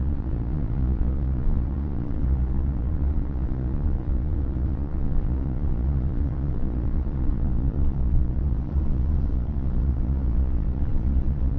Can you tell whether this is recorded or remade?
remade